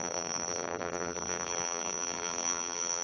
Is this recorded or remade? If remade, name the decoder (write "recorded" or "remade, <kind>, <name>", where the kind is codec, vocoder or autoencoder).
remade, vocoder, BigVGAN v2